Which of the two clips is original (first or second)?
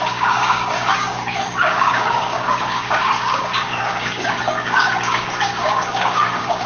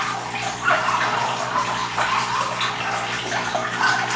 second